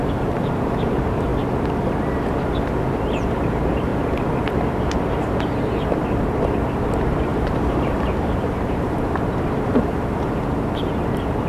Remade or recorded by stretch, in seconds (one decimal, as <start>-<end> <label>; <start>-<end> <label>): 0.0-1.3 remade; 1.3-2.9 recorded; 2.9-3.9 remade; 3.9-4.4 recorded; 4.4-11.5 remade